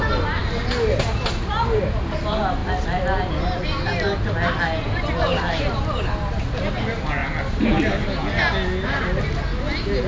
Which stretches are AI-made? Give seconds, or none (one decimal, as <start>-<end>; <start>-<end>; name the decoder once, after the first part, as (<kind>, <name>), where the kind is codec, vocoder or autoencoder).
none